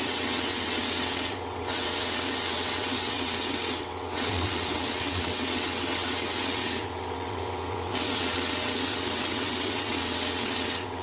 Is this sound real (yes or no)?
no